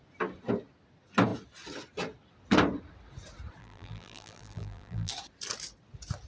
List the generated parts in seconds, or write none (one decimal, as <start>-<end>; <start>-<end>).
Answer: 3.6-5.1